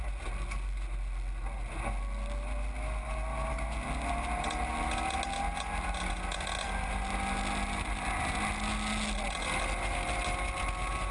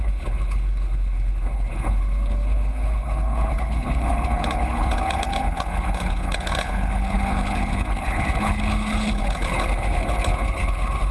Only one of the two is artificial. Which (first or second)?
second